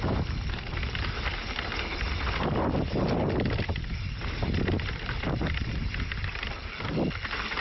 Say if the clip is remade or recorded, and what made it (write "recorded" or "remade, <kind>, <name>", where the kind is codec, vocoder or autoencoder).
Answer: recorded